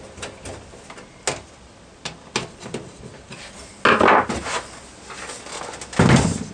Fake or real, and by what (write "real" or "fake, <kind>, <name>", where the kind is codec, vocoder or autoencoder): real